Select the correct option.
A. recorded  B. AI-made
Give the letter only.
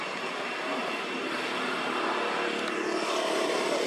A